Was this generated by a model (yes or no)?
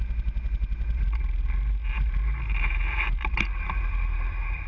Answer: no